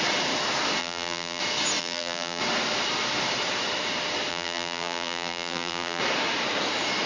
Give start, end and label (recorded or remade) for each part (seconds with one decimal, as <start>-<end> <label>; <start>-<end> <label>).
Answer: 0.0-0.8 recorded; 0.8-1.4 remade; 1.4-1.8 recorded; 1.8-2.4 remade; 2.4-4.3 recorded; 4.3-6.0 remade; 6.0-7.1 recorded